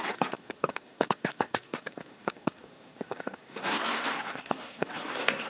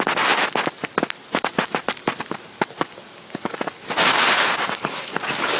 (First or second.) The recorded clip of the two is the second